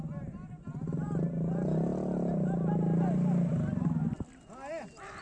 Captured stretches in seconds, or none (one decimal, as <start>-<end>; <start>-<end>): 0.0-5.2